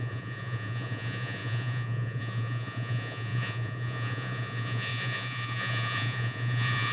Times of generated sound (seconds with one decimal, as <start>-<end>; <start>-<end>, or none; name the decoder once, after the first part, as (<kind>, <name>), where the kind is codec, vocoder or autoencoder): 0.0-6.9 (vocoder, Vocos)